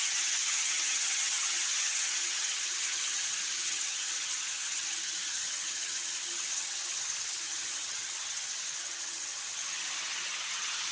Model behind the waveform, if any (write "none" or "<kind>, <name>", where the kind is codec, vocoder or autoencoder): vocoder, HiFi-GAN